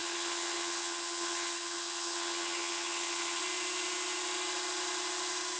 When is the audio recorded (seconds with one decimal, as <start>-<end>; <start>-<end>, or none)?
3.4-5.6